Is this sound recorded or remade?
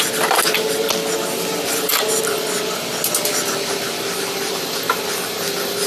recorded